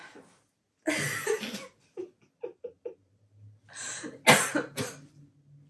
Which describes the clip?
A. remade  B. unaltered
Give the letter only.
B